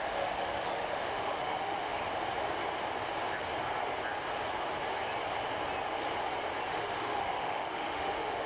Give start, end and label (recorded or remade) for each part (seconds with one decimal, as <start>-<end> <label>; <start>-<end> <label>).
0.0-2.0 remade; 2.0-6.7 recorded; 6.7-8.5 remade